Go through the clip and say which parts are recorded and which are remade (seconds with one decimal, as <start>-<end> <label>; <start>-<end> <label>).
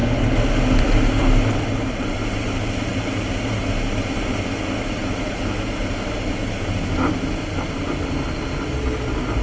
0.0-9.4 recorded